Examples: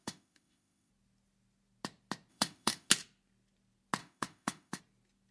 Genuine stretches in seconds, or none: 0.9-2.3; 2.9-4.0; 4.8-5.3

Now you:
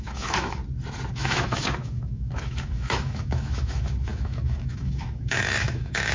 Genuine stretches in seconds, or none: 0.6-1.1

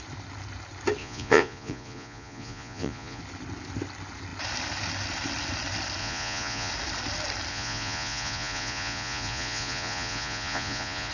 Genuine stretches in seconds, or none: 0.0-1.0; 3.2-6.0; 6.7-7.5

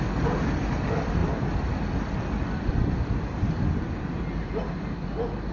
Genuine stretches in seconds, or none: 0.0-5.5

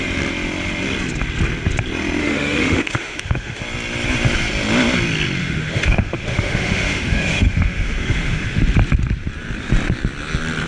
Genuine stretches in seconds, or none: 0.0-2.2; 3.6-5.4; 8.6-10.7

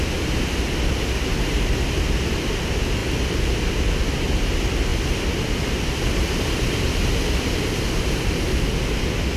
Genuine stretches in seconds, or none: 0.0-3.0; 3.7-4.9; 8.3-9.4

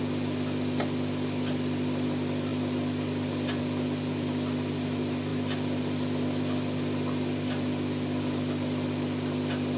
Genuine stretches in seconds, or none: 0.0-9.8